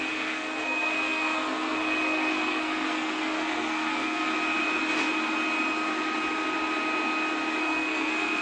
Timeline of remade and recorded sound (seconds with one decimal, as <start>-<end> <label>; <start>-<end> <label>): 0.0-4.3 remade; 4.3-7.6 recorded; 7.6-8.4 remade